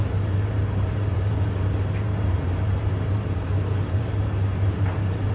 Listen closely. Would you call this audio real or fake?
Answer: fake